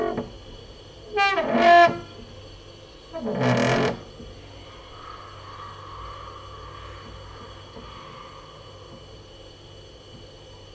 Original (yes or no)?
yes